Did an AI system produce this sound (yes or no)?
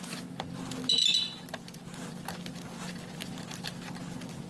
no